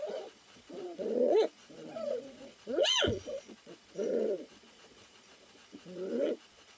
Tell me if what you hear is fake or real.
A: fake